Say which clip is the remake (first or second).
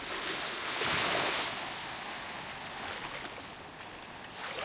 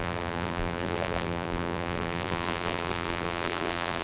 second